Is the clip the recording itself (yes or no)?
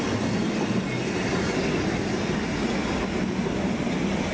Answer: yes